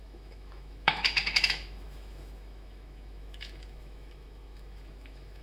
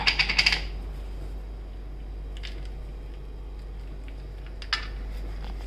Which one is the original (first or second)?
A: second